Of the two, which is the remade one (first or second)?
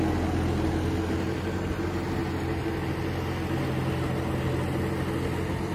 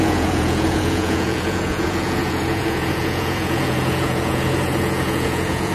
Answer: second